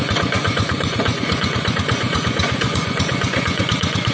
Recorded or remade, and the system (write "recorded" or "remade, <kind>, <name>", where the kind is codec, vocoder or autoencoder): remade, vocoder, Vocos